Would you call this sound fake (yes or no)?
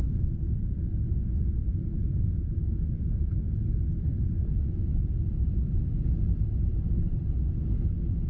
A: no